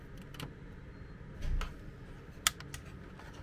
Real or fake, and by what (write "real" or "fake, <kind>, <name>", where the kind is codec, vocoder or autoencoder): real